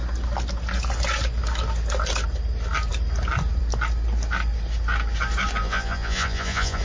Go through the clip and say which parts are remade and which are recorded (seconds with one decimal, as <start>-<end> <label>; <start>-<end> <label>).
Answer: 0.0-5.6 recorded; 5.6-6.8 remade